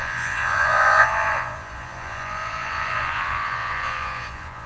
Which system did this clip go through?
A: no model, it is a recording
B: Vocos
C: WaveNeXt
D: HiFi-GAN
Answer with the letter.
B